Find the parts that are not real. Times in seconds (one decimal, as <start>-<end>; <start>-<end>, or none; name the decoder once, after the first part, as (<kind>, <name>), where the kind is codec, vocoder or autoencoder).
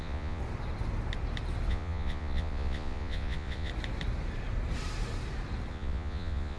0.0-0.4 (vocoder, Vocos); 1.7-3.7; 5.7-6.6